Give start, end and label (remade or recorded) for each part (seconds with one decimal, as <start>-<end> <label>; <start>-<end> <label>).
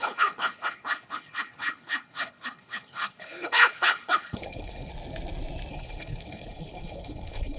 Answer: 0.0-4.9 remade; 4.9-5.7 recorded; 5.7-7.6 remade